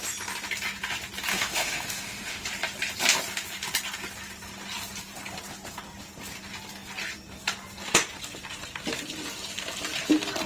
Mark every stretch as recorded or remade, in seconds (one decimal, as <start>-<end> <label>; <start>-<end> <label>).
0.0-1.3 recorded; 1.3-2.5 remade; 2.5-10.5 recorded